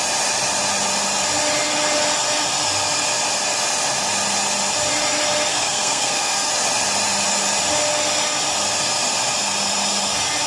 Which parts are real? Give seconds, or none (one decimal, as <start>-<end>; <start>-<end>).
0.0-5.5; 6.5-10.5